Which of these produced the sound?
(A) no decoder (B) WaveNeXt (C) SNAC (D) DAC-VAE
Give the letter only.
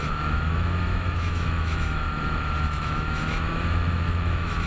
D